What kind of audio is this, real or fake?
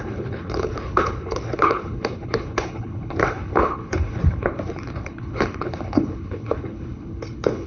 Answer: fake